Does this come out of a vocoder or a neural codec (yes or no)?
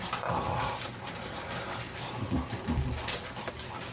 no